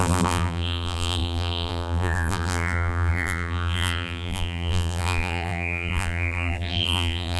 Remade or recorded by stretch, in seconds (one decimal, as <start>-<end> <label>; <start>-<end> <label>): 0.0-7.4 remade